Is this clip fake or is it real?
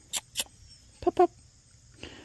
real